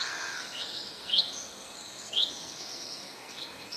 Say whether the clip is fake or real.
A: fake